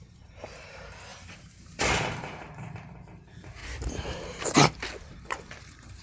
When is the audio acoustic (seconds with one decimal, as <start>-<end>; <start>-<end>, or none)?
3.6-5.6